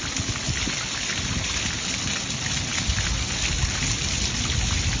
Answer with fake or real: real